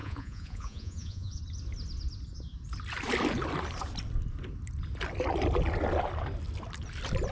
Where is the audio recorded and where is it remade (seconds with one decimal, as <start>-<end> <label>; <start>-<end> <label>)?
0.0-1.4 remade; 1.4-7.3 recorded